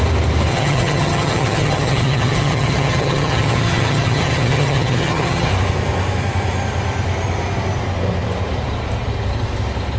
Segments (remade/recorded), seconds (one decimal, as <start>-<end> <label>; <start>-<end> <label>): 0.0-0.5 recorded; 0.5-5.5 remade; 5.5-10.0 recorded